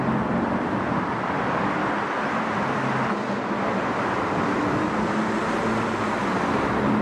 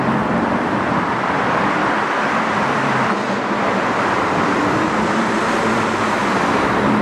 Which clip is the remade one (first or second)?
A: second